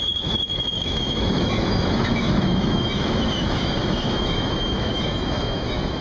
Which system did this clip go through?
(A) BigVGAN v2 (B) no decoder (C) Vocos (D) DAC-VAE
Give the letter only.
D